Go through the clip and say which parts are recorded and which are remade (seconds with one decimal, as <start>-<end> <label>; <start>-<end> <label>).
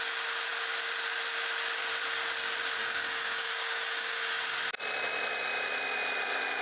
0.0-2.8 recorded; 2.8-4.4 remade; 4.4-6.6 recorded